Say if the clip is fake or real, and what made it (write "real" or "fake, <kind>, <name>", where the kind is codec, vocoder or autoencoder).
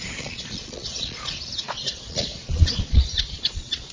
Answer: fake, vocoder, Vocos